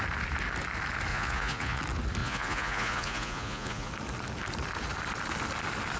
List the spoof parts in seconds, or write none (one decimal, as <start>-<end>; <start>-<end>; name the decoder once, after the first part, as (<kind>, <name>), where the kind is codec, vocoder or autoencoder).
1.1-1.8 (vocoder, Vocos); 2.2-3.9